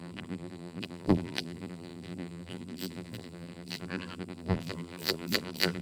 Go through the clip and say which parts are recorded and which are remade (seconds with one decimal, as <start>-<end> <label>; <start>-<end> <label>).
0.0-5.8 remade